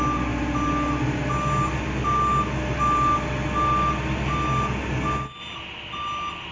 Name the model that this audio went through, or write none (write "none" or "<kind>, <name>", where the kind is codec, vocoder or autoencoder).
none